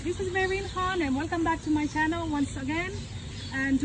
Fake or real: real